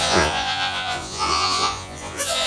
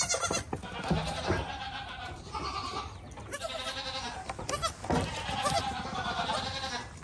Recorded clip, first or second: second